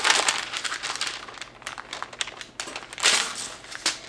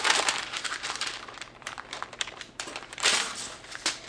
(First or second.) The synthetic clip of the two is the second